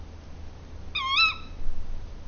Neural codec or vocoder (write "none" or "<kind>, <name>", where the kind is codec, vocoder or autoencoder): none